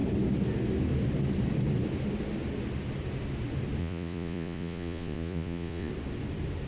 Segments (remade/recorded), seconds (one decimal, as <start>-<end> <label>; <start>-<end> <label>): 0.0-3.8 recorded; 3.8-5.9 remade; 5.9-6.7 recorded